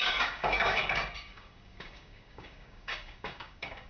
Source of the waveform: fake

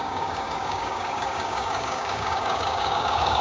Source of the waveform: fake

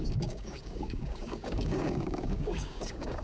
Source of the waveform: fake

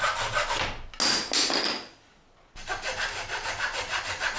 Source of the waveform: real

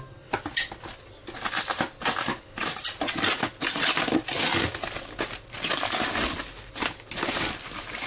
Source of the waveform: real